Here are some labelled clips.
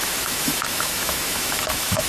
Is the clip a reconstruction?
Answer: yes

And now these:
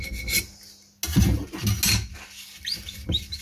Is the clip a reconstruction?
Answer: no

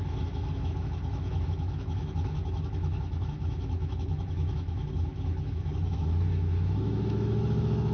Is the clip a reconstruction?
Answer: yes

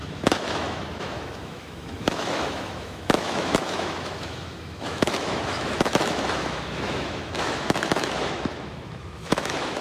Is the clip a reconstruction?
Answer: yes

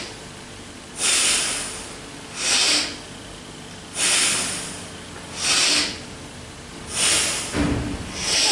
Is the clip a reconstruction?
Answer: no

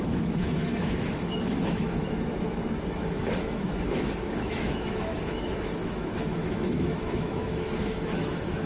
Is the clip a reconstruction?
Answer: yes